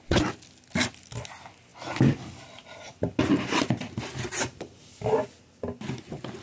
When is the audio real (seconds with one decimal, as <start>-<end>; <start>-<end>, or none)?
0.0-6.4